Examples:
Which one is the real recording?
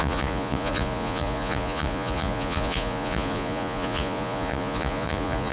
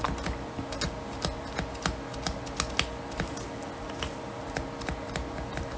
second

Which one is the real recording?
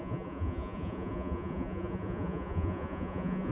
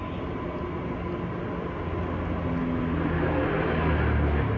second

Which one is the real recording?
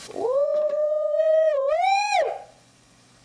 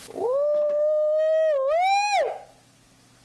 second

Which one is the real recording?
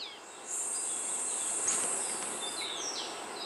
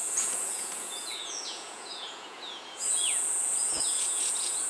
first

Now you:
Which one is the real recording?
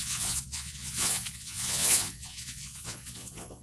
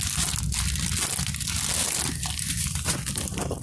second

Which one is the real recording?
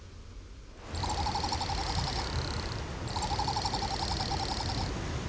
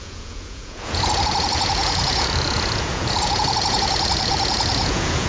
first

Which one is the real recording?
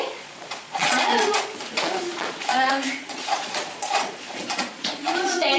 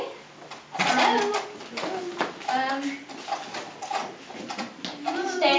second